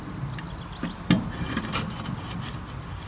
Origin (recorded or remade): recorded